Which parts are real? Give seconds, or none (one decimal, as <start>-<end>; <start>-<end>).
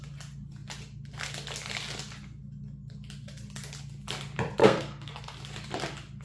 0.0-4.6; 5.1-6.2